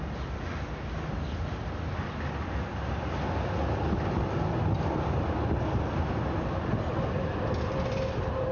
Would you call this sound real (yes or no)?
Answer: yes